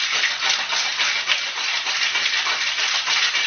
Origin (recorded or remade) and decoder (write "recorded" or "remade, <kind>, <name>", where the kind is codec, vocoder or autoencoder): recorded